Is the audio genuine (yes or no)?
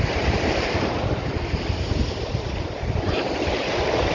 no